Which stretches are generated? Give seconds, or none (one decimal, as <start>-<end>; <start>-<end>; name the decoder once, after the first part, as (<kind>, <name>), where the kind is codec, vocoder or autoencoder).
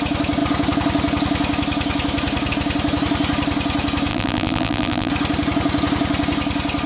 4.1-5.1 (vocoder, BigVGAN v2)